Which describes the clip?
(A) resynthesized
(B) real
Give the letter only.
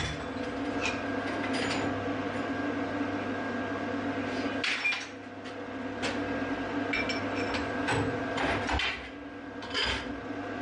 B